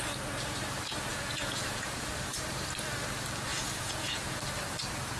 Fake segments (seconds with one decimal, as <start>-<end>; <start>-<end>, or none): 1.1-2.1; 3.5-4.4